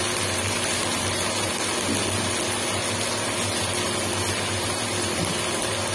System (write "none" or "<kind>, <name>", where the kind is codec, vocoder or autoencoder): none